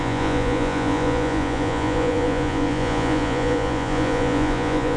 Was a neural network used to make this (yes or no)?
yes